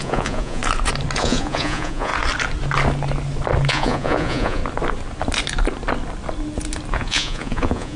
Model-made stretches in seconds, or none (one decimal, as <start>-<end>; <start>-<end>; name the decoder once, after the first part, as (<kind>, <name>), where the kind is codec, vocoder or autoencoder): 0.0-0.6 (vocoder, Vocos); 1.2-2.1; 3.7-4.6; 6.9-8.0